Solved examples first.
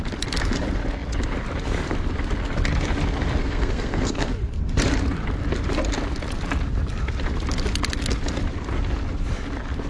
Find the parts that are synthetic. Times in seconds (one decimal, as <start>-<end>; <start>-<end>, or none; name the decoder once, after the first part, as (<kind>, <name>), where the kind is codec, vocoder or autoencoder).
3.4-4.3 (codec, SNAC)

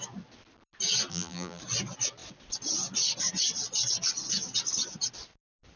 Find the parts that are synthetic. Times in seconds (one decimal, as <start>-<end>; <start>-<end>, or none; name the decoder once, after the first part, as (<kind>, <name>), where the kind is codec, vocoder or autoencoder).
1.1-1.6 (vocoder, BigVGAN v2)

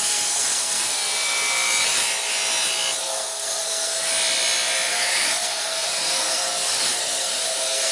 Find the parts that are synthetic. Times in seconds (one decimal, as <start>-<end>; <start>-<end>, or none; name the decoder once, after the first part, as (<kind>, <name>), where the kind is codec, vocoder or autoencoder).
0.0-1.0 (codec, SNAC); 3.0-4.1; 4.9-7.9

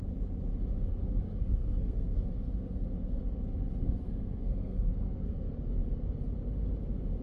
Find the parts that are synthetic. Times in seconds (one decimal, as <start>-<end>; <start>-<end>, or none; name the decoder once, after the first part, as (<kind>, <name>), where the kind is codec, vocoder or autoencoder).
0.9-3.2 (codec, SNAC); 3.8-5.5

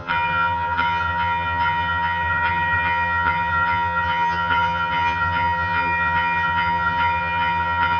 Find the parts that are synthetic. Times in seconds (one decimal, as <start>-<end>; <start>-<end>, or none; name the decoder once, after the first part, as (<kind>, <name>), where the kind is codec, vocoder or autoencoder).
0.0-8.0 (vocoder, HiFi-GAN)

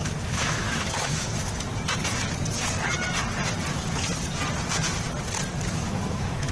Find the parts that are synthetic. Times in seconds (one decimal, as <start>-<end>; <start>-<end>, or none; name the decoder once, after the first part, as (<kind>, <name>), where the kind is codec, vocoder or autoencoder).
0.0-1.7 (autoencoder, DAC-VAE); 5.6-6.5